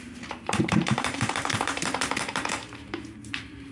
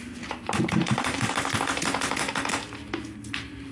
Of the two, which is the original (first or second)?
second